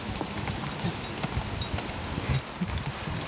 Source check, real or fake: real